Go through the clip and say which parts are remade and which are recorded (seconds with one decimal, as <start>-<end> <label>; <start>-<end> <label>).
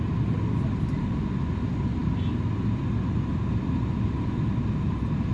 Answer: 0.0-5.3 recorded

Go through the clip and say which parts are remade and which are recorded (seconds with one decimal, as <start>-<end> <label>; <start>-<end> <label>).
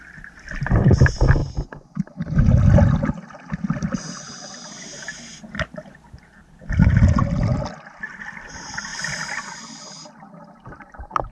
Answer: 0.0-11.3 recorded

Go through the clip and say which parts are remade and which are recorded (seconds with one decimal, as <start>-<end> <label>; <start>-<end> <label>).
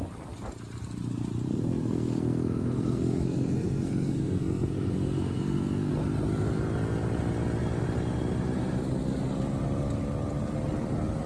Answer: 0.0-1.5 recorded; 1.5-5.9 remade; 5.9-11.3 recorded